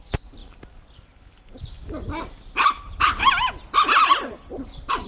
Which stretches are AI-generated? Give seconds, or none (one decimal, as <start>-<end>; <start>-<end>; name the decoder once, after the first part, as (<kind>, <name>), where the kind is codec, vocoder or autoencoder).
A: none